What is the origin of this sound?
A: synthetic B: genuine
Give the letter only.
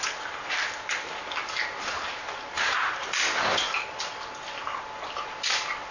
B